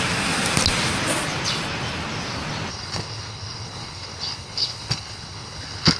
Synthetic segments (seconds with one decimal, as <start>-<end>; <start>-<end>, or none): 2.7-6.0